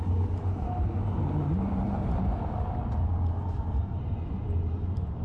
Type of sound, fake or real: real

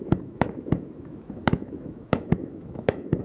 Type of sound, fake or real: fake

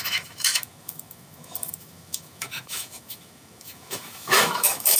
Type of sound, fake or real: fake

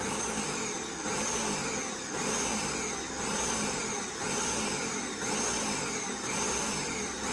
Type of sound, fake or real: real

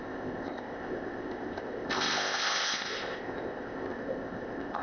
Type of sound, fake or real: fake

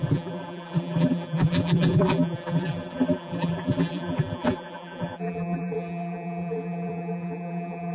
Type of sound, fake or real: fake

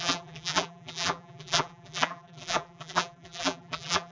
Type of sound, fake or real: fake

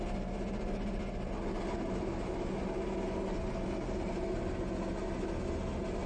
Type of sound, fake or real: real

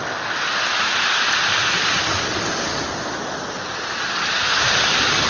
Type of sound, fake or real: real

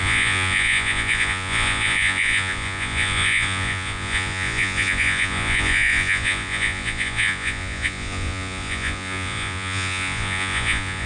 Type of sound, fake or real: fake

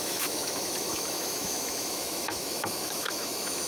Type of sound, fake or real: fake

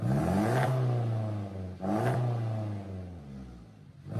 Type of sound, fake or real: real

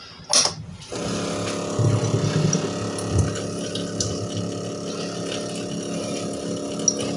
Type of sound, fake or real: real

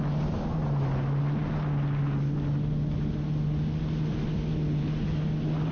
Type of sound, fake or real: real